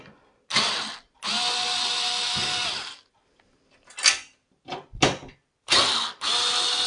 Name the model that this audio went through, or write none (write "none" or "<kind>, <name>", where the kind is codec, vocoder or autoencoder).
none